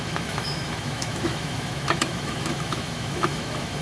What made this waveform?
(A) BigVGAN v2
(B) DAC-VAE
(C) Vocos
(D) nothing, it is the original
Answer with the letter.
B